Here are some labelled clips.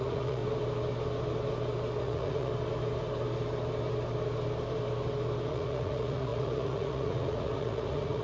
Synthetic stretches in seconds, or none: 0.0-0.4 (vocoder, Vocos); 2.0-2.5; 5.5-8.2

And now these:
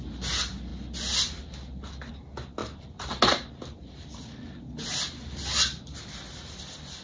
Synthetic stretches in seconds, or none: none